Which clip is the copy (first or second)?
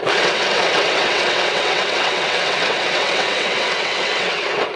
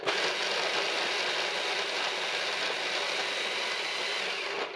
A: first